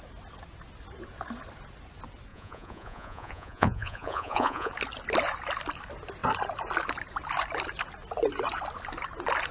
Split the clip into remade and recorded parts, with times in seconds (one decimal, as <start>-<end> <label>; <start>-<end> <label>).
0.0-2.3 recorded; 2.3-4.7 remade; 4.7-9.5 recorded